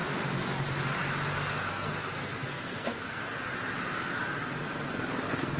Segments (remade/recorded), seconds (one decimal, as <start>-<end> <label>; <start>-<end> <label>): 0.0-1.7 recorded; 1.7-3.2 remade; 3.2-4.9 recorded; 4.9-5.6 remade